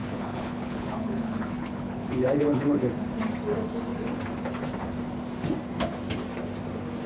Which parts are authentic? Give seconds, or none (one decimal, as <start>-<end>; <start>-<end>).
2.9-7.1